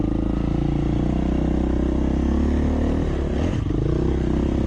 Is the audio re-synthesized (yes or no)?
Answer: no